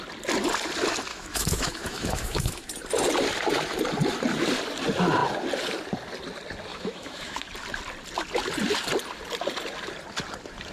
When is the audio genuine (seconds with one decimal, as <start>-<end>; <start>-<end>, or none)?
0.0-1.1; 2.7-6.7; 7.5-10.7